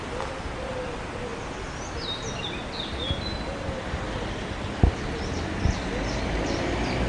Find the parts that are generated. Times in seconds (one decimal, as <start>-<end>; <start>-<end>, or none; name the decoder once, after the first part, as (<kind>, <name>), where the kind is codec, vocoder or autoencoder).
none